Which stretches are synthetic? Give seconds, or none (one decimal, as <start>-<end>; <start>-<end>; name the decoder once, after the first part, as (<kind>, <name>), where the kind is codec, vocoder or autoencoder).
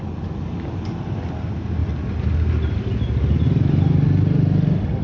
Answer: none